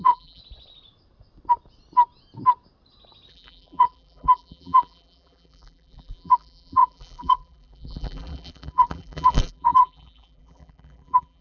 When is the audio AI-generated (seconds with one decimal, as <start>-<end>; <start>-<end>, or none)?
0.0-0.4; 3.3-11.4